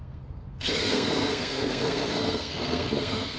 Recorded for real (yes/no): no